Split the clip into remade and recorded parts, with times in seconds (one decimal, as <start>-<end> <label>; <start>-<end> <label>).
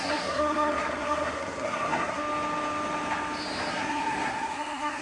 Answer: 0.0-2.2 remade; 2.2-3.7 recorded; 3.7-5.0 remade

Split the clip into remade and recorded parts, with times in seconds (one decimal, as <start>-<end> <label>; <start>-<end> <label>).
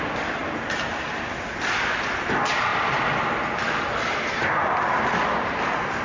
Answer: 0.0-6.0 recorded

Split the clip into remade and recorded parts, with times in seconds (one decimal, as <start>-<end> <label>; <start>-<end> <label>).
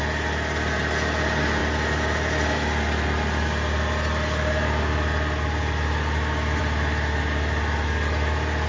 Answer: 0.0-8.7 recorded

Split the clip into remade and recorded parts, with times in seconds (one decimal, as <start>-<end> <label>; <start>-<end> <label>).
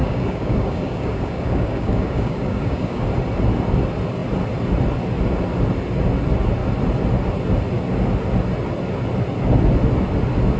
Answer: 0.0-3.0 remade; 3.0-10.6 recorded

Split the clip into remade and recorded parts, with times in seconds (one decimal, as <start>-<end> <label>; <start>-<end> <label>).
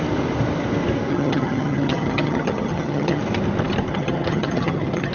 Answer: 0.0-1.1 recorded; 1.1-3.2 remade; 3.2-3.9 recorded; 3.9-5.1 remade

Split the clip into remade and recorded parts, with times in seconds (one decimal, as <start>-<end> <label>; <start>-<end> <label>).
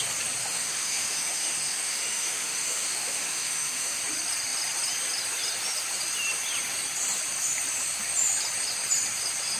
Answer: 0.0-0.4 recorded; 0.4-4.0 remade; 4.0-9.6 recorded